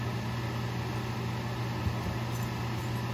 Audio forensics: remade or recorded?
recorded